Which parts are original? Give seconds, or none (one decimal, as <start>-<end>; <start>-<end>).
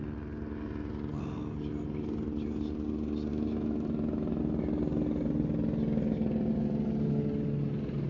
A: 0.0-3.3; 4.4-8.1